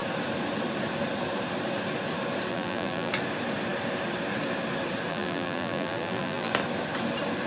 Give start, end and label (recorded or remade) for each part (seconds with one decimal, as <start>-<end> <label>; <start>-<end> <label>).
0.0-2.5 recorded; 2.5-3.1 remade; 3.1-5.1 recorded; 5.1-6.5 remade; 6.5-7.5 recorded